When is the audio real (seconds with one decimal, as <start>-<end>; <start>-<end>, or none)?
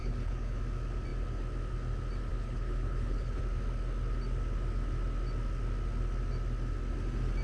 0.6-2.3; 3.4-7.4